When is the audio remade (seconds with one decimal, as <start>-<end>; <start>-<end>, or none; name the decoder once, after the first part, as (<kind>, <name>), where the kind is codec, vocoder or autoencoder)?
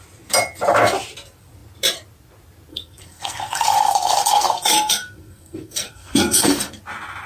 2.7-6.8 (codec, SNAC)